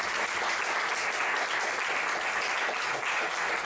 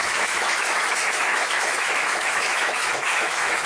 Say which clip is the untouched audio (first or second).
first